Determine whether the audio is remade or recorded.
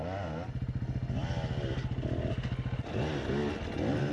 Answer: recorded